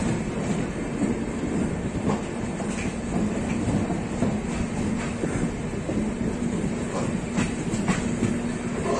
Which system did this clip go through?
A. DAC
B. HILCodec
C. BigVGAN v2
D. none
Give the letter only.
D